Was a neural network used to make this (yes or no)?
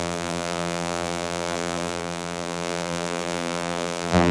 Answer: yes